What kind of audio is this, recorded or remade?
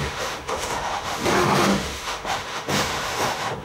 remade